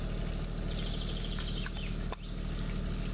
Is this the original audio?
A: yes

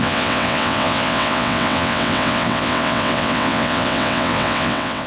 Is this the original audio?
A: no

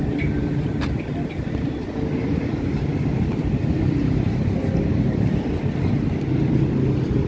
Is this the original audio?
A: yes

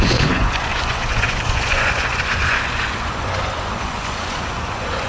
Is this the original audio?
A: no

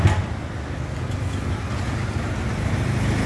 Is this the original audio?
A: yes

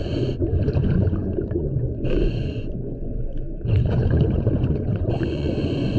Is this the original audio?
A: no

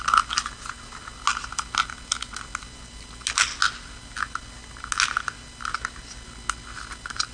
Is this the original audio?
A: yes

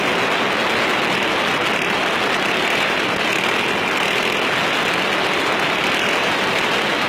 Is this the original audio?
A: yes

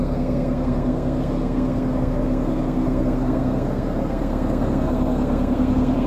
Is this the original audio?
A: no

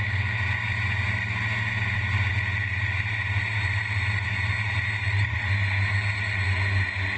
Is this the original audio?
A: yes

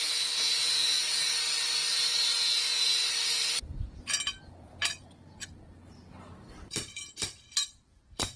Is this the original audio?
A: no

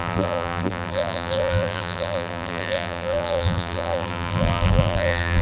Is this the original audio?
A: no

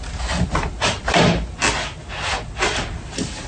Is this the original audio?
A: yes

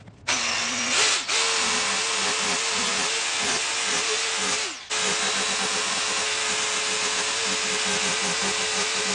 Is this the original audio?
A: yes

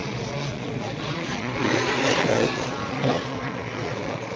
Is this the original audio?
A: no